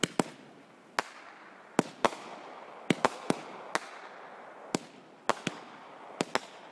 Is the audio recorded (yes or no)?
yes